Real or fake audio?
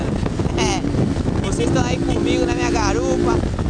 real